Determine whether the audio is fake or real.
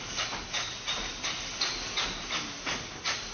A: real